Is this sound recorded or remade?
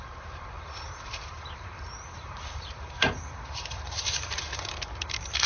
remade